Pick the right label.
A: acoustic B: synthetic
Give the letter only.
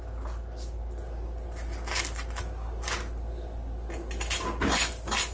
A